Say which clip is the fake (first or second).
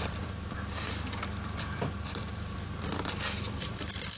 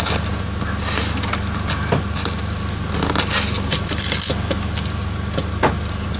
first